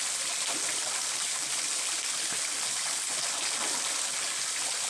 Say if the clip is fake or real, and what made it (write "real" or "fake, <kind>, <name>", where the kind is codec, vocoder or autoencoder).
real